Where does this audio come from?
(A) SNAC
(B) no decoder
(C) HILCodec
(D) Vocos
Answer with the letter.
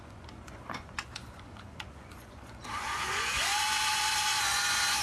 D